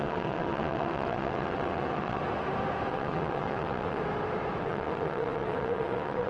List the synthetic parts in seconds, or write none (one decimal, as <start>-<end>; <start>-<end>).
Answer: 0.0-2.2; 2.9-4.0; 4.6-6.3